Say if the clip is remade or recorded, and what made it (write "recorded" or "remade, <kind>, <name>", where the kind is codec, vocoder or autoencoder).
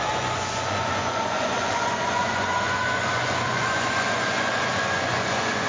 remade, vocoder, Vocos